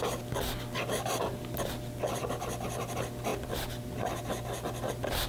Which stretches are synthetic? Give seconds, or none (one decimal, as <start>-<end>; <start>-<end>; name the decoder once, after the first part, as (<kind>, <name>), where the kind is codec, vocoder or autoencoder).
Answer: none